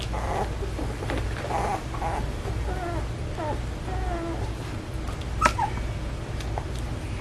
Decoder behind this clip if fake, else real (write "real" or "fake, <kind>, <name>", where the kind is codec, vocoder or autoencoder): real